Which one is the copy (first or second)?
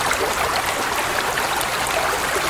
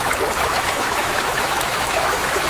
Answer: second